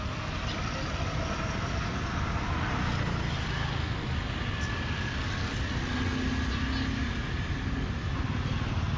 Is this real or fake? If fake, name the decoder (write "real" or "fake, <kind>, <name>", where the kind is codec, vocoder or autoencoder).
real